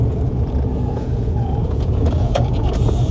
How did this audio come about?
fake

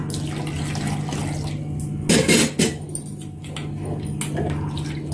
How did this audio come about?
real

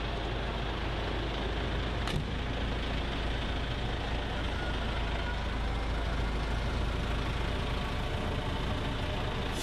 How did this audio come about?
real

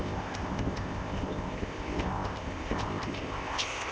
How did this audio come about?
fake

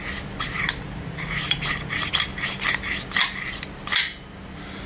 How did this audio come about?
real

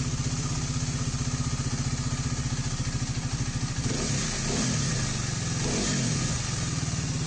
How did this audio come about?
real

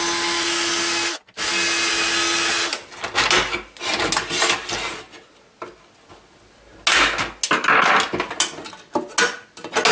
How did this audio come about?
real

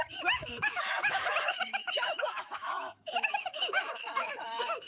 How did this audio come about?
fake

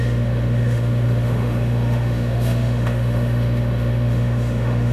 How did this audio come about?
fake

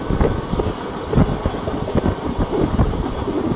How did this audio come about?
real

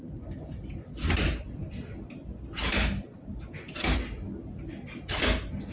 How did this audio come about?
real